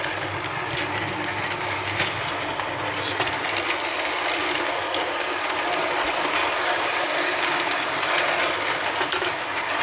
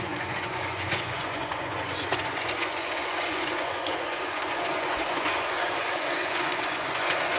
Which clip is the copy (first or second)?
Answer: second